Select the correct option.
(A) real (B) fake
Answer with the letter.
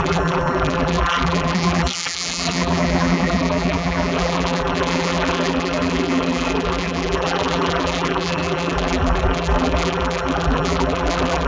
B